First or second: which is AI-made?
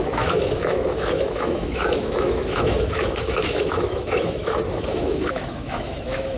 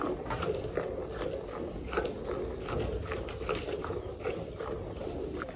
first